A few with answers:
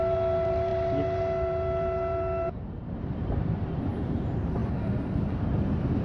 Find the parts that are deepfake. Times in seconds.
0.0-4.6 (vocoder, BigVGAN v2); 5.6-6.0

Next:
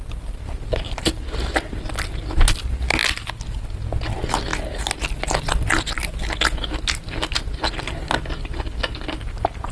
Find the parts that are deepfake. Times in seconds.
none

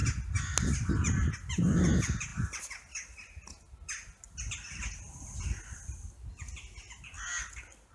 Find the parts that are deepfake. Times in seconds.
none